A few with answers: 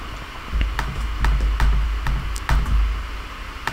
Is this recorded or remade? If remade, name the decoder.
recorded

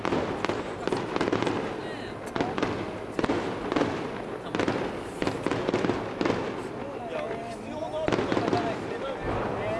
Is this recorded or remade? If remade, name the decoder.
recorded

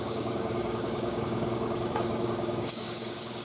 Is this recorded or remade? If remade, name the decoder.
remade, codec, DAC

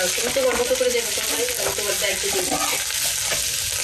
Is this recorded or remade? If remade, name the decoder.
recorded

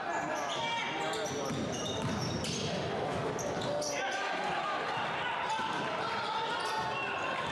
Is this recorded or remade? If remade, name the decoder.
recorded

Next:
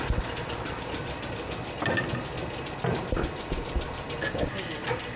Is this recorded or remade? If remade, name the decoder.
recorded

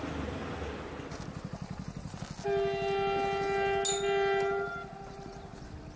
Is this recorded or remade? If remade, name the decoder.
recorded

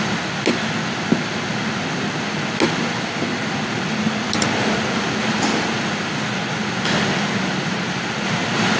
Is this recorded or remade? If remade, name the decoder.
recorded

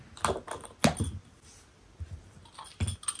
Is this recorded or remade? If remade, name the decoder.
recorded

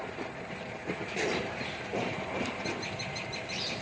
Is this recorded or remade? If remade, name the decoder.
remade, vocoder, BigVGAN v2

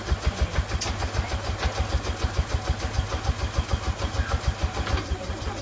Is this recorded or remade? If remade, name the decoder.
recorded